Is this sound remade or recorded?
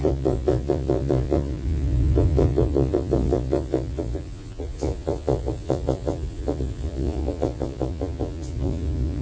remade